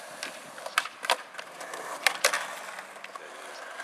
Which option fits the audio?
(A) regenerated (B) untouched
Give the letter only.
B